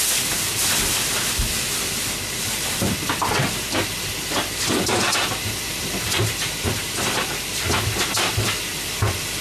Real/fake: fake